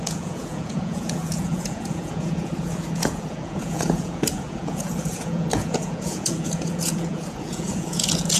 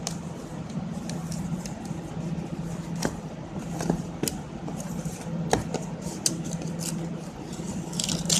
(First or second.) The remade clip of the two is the first